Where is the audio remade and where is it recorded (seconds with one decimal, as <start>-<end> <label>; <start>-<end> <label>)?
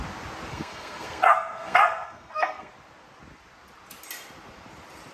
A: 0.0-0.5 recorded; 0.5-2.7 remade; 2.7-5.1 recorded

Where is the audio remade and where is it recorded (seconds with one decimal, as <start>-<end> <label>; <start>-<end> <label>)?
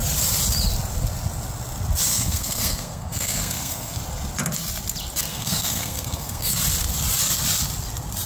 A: 0.0-2.1 recorded; 2.1-4.0 remade; 4.0-5.3 recorded; 5.3-6.6 remade; 6.6-8.3 recorded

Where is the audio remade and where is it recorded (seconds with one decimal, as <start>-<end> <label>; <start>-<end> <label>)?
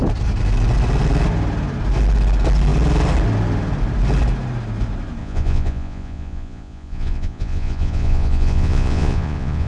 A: 0.0-5.2 recorded; 5.2-9.7 remade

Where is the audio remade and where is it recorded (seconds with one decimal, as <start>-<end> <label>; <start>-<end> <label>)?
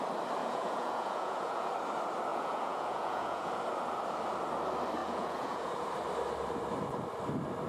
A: 0.0-0.4 recorded; 0.4-1.7 remade; 1.7-2.3 recorded; 2.3-3.5 remade; 3.5-5.0 recorded; 5.0-5.7 remade; 5.7-7.7 recorded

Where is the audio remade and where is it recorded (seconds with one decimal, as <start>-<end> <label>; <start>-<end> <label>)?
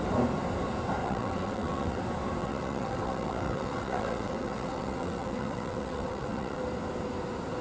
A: 0.0-1.0 recorded; 1.0-2.0 remade; 2.0-2.4 recorded; 2.4-6.6 remade; 6.6-7.6 recorded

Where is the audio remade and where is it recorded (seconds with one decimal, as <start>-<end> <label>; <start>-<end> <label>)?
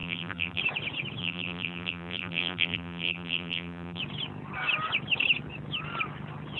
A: 0.0-0.6 remade; 0.6-1.2 recorded; 1.2-4.0 remade; 4.0-6.6 recorded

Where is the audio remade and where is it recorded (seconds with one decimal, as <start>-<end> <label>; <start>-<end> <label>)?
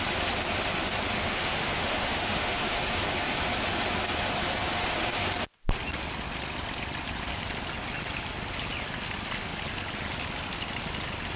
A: 0.0-1.2 recorded; 1.2-2.8 remade; 2.8-11.4 recorded